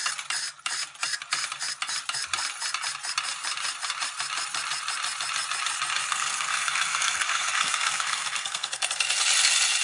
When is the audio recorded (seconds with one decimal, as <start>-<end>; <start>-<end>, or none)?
0.0-6.1; 8.9-9.8